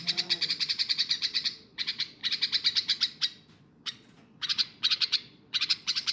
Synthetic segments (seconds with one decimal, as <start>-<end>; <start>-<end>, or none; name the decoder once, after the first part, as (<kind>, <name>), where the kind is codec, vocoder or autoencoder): 0.0-2.2 (vocoder, Vocos); 3.6-6.1